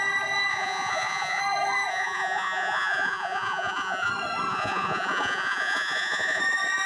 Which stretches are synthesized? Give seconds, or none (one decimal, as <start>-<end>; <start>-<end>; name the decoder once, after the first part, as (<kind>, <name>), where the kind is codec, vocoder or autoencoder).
0.5-1.4 (vocoder, Vocos); 1.9-4.1; 4.5-6.4